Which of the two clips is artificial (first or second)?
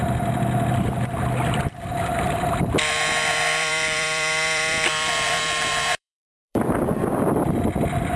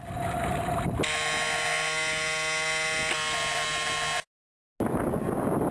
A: first